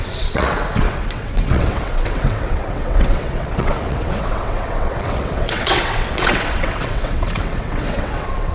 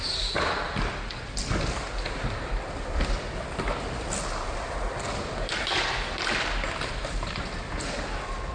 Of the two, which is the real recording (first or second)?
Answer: second